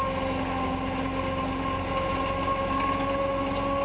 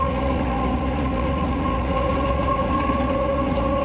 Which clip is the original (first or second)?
first